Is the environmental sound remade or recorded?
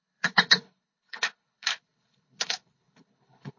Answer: remade